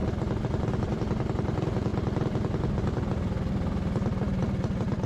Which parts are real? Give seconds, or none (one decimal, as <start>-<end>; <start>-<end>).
0.0-0.7; 1.9-5.1